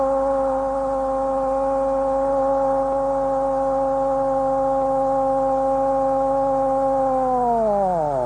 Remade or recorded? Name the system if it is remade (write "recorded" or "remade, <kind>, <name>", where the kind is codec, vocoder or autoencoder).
recorded